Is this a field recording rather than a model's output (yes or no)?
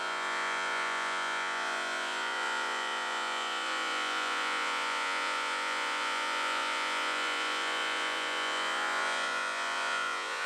no